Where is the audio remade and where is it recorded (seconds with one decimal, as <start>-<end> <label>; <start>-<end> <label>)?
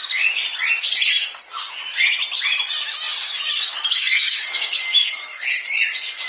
0.0-3.5 recorded; 3.5-5.5 remade; 5.5-6.3 recorded